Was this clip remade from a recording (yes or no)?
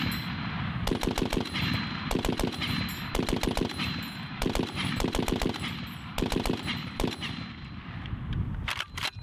no